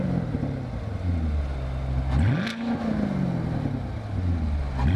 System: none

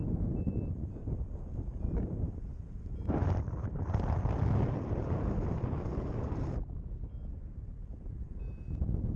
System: none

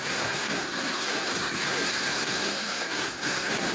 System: codec, SNAC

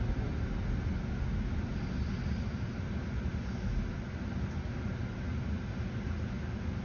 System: none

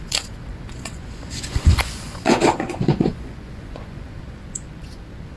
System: vocoder, Vocos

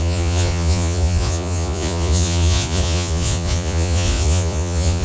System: vocoder, Vocos